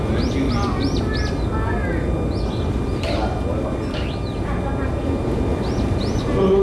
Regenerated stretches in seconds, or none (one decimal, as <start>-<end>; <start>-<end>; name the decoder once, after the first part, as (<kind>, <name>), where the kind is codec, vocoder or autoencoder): none